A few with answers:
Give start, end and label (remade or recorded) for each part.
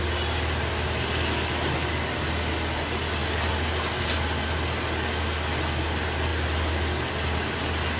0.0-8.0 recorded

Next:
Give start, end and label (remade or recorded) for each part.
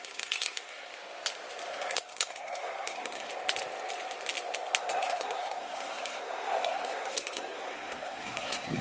0.0-0.9 remade; 0.9-1.7 recorded; 1.7-3.3 remade; 3.3-4.8 recorded; 4.8-8.8 remade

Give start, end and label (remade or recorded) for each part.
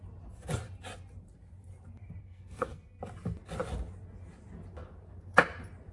0.0-2.2 recorded; 2.2-3.0 remade; 3.0-5.9 recorded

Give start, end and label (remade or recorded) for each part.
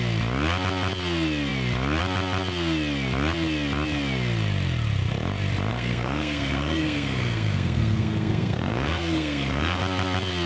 0.0-5.7 recorded; 5.7-9.8 remade; 9.8-10.5 recorded